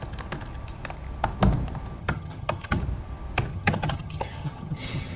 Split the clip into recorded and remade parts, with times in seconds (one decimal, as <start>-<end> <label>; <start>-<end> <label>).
0.0-2.0 recorded; 2.0-2.8 remade; 2.8-3.5 recorded; 3.5-5.2 remade

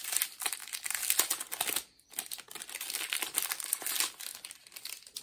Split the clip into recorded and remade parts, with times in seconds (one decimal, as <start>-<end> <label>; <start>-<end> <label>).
0.0-5.2 recorded

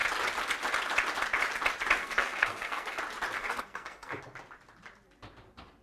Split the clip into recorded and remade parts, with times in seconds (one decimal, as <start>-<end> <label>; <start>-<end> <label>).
0.0-2.0 recorded; 2.0-3.0 remade; 3.0-3.4 recorded; 3.4-4.2 remade; 4.2-5.8 recorded

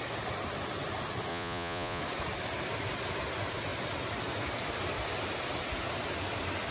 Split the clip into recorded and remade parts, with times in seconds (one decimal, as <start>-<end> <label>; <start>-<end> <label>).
0.0-1.3 recorded; 1.3-2.0 remade; 2.0-6.7 recorded